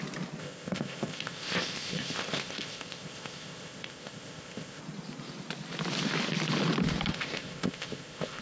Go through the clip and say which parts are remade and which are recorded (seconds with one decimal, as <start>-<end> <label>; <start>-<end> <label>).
0.0-0.4 recorded; 0.4-4.8 remade; 4.8-7.1 recorded; 7.1-8.4 remade